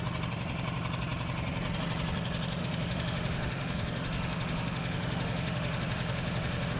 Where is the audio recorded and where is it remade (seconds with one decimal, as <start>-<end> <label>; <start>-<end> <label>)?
0.0-2.6 recorded; 2.6-6.8 remade